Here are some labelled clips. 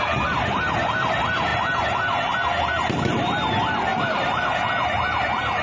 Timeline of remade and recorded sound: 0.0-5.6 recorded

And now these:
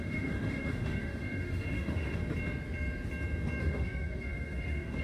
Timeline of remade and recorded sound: 0.0-2.2 remade; 2.2-3.6 recorded; 3.6-5.0 remade

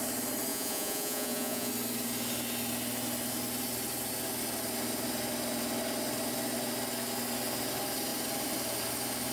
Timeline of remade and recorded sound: 0.0-0.5 recorded; 0.5-1.7 remade; 1.7-9.3 recorded

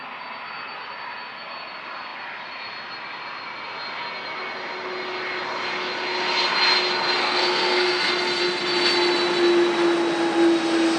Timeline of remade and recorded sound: 0.0-7.2 recorded; 7.2-8.1 remade; 8.1-11.0 recorded

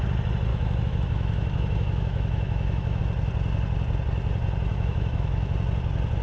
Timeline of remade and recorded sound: 0.0-0.5 recorded; 0.5-3.0 remade; 3.0-4.7 recorded; 4.7-5.5 remade; 5.5-6.2 recorded